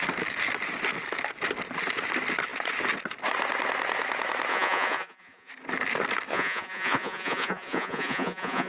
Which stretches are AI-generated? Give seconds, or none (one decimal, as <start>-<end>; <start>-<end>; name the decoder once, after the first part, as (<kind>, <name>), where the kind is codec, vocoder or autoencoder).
4.5-5.5 (vocoder, Vocos); 6.3-8.7